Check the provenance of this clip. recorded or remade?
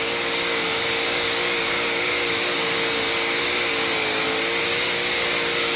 remade